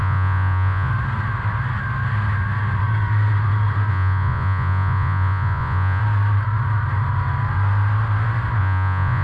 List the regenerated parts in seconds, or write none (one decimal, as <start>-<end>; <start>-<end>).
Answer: 0.0-0.9; 3.9-6.0; 8.6-9.2